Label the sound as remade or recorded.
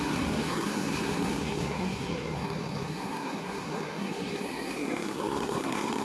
remade